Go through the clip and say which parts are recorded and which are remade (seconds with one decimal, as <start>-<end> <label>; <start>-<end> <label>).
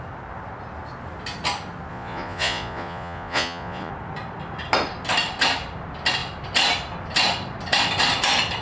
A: 0.0-1.9 recorded; 1.9-3.9 remade; 3.9-8.6 recorded